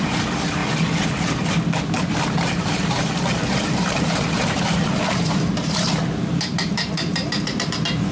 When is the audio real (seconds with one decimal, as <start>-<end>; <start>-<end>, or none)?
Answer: 0.6-2.0